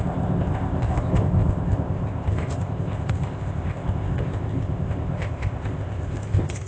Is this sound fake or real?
fake